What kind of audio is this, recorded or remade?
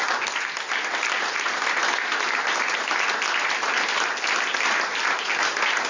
recorded